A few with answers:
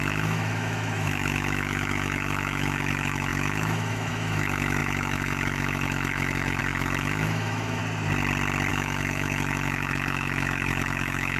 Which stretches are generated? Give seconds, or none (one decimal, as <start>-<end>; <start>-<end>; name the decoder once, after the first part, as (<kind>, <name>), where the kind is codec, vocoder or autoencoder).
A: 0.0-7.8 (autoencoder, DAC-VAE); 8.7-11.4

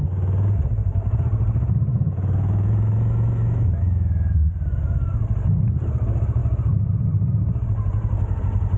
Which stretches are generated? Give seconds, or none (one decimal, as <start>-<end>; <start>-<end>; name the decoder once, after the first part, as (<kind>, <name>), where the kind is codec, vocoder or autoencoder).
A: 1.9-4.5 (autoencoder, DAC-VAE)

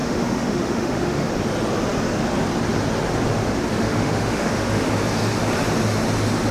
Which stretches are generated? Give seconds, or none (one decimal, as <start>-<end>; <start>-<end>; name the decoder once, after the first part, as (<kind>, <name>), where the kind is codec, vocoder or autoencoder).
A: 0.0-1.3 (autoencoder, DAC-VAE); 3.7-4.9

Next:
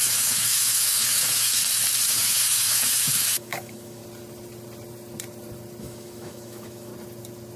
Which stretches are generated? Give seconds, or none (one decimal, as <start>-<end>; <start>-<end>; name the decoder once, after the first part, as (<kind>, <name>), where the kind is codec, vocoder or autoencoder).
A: 0.0-1.6 (autoencoder, DAC-VAE); 2.1-4.0; 5.8-6.9

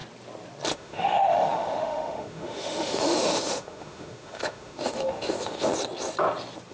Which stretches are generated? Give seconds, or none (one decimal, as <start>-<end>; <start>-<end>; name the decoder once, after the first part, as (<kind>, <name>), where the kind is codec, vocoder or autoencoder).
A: 0.7-5.7 (autoencoder, DAC-VAE)

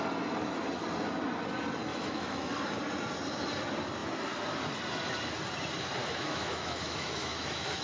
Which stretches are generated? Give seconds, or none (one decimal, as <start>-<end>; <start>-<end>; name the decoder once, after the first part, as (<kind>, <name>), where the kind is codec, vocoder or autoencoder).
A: 1.9-2.5 (autoencoder, DAC-VAE); 6.0-7.8